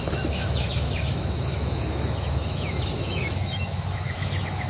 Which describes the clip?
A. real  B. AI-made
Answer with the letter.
B